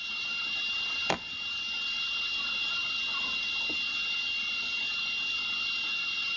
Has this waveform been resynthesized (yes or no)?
no